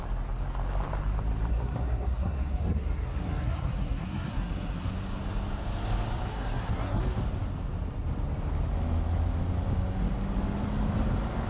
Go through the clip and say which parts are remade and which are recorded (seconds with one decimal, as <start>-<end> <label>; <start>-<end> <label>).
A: 0.0-1.5 recorded; 1.5-4.9 remade; 4.9-6.3 recorded; 6.3-7.0 remade; 7.0-11.5 recorded